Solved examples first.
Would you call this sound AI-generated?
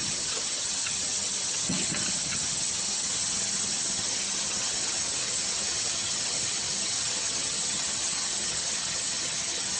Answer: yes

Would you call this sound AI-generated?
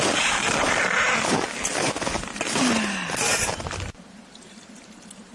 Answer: no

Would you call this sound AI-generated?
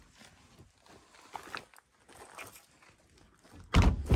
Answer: no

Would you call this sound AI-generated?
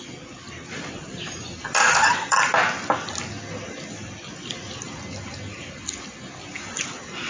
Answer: no